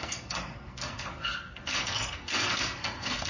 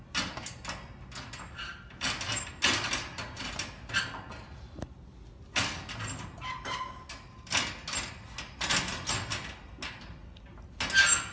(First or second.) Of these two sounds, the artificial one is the first